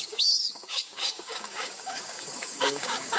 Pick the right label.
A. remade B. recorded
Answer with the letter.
A